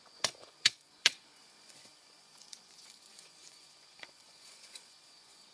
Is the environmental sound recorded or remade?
remade